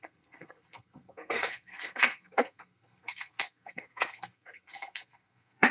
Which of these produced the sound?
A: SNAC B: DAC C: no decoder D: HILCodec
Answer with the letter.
A